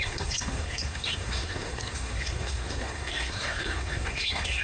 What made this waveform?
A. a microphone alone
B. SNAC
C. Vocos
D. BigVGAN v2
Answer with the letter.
B